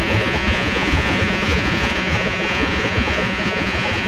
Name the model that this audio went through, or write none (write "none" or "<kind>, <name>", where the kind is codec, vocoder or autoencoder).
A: vocoder, Vocos